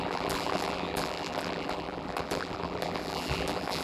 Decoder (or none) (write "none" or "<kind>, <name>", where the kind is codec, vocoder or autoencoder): vocoder, BigVGAN v2